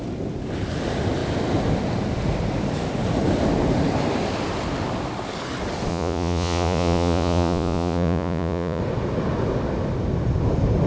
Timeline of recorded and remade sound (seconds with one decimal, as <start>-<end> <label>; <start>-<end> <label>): 0.0-5.9 recorded; 5.9-8.8 remade; 8.8-10.9 recorded